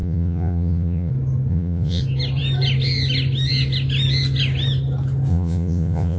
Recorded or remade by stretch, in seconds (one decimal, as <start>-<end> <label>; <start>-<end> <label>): 0.0-1.1 remade; 1.1-1.5 recorded; 1.5-2.0 remade; 2.0-5.3 recorded; 5.3-6.2 remade